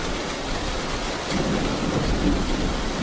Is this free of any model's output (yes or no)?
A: yes